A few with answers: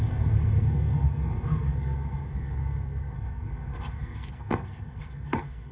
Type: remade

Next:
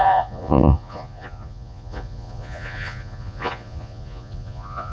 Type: remade